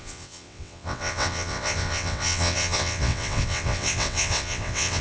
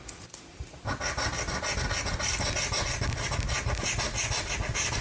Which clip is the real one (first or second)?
second